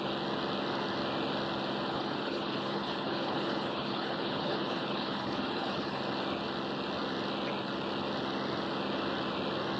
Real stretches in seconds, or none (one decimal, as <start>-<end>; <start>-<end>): 0.0-1.9; 6.0-9.8